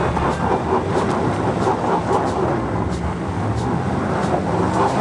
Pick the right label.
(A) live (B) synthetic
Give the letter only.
A